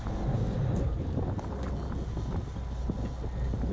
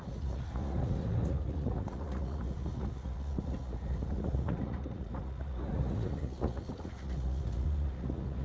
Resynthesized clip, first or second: second